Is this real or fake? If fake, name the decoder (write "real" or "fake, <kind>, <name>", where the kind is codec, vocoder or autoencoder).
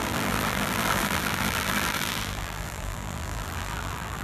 fake, vocoder, BigVGAN v2